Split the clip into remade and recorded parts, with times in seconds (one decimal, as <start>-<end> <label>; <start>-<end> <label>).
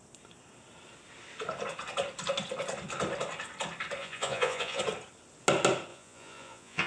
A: 0.0-4.0 recorded; 4.0-4.8 remade; 4.8-5.9 recorded; 5.9-6.9 remade